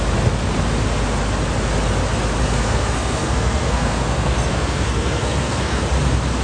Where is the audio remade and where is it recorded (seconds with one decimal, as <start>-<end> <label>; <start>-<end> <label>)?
0.0-2.4 recorded; 2.4-5.8 remade; 5.8-6.4 recorded